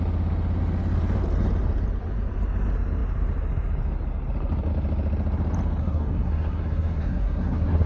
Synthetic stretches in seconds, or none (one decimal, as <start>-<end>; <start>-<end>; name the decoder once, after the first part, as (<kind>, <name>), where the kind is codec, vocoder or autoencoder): 5.8-7.9 (codec, SNAC)